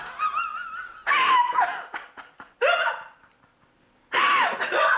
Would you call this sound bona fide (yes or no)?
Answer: yes